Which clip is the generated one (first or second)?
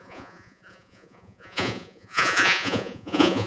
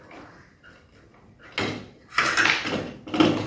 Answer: first